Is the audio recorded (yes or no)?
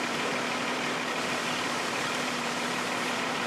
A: no